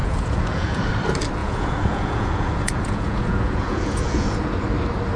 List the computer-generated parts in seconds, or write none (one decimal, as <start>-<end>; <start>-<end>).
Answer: 0.0-0.9; 1.4-4.5